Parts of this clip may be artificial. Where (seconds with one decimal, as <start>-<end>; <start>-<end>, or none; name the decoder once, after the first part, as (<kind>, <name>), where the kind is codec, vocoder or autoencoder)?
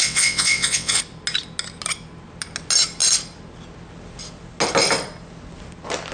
0.0-1.0 (vocoder, WaveNeXt)